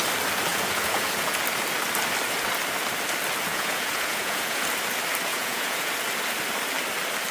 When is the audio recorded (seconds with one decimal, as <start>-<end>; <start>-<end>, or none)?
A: 0.0-0.5; 1.4-3.5; 4.6-5.3; 5.9-7.3